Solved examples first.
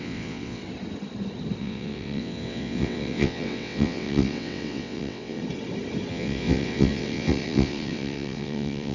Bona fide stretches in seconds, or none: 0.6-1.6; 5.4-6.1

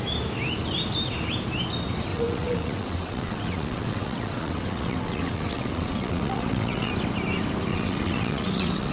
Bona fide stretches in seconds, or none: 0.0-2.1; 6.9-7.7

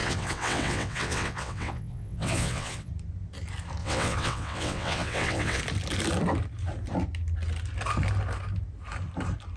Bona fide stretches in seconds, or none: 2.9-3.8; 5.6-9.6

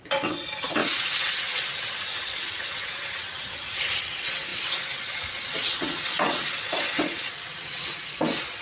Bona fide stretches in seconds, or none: none

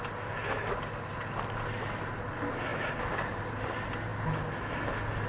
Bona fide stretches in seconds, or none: 0.0-5.3